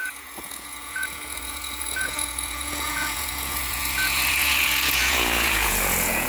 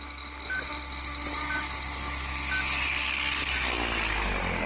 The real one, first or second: second